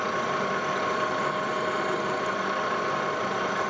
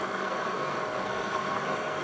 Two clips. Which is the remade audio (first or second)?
second